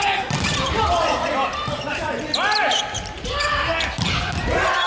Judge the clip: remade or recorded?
recorded